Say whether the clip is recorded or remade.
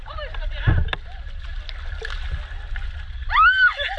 recorded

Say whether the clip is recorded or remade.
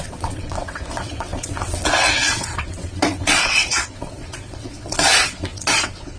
remade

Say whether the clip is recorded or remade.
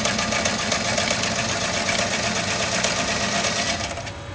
recorded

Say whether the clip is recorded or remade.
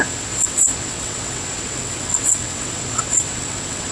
remade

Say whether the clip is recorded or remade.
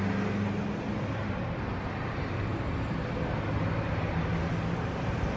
recorded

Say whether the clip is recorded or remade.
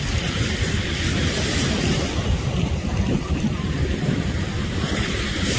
remade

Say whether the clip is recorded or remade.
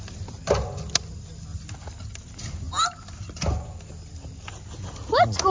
recorded